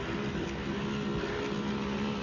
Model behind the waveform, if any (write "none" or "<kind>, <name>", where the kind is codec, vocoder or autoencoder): none